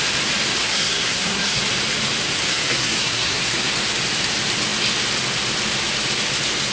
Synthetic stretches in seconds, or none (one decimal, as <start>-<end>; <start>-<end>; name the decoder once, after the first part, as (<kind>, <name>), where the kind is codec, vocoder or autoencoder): 0.6-1.6 (codec, SNAC); 2.5-3.7